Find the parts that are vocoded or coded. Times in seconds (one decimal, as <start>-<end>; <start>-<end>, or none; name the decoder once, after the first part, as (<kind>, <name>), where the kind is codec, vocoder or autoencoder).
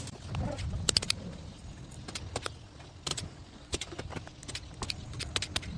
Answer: 3.1-4.0 (vocoder, Vocos)